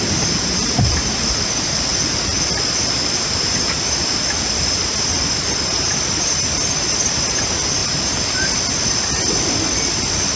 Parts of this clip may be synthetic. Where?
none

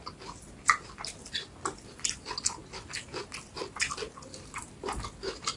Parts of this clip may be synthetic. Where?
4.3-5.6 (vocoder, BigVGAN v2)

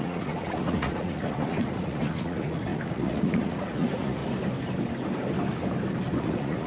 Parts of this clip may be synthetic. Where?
0.0-4.2 (vocoder, Vocos); 6.2-6.7

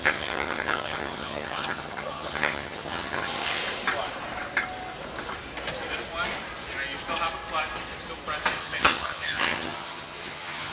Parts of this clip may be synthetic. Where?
0.0-3.6 (vocoder, HiFi-GAN); 8.6-10.7

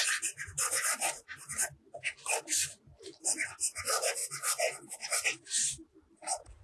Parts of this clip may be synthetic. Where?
2.9-3.5 (vocoder, BigVGAN v2); 4.2-6.6

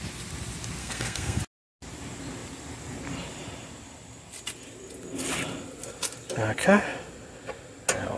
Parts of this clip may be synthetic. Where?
0.8-1.4 (codec, SNAC)

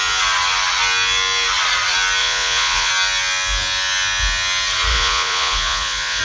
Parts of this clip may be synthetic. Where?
2.2-2.9 (vocoder, Vocos); 4.9-6.2

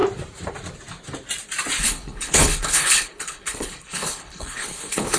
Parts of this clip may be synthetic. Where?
1.8-5.2 (codec, HILCodec)